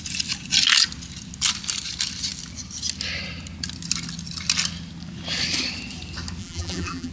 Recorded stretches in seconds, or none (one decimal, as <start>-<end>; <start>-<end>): 0.0-6.4